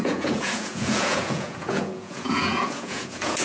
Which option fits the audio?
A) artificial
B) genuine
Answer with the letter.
A